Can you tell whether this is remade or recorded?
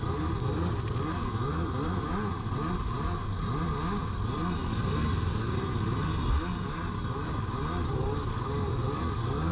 recorded